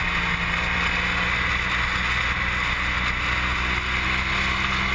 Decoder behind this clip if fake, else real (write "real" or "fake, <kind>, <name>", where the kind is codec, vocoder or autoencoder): real